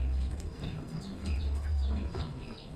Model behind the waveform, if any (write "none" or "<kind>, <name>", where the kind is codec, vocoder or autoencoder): codec, SNAC